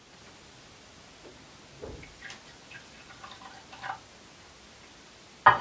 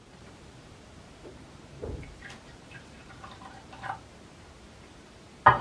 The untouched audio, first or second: first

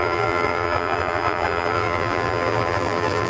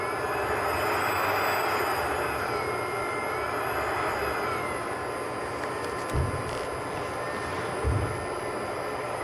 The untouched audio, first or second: second